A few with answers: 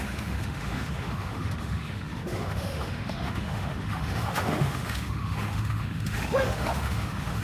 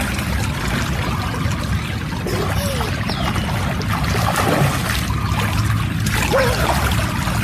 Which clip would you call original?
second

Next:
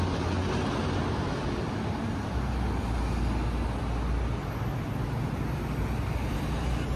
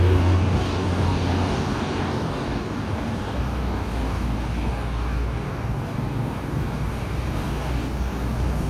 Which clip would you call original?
first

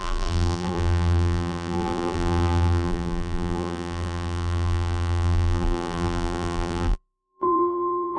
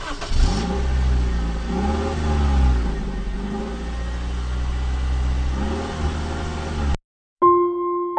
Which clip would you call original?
second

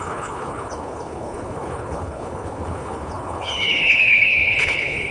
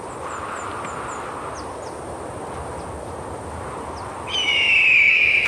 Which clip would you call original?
second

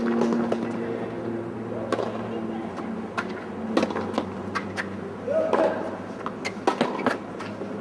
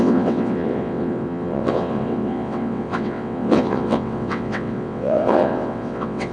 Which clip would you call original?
first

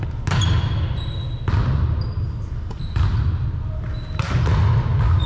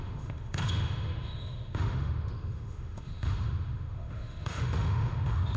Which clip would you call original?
first